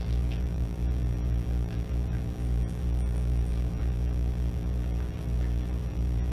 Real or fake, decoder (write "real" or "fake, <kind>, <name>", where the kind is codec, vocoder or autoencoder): fake, vocoder, BigVGAN v2